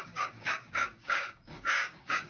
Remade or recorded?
remade